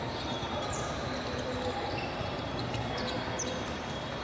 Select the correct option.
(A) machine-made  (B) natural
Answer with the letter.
A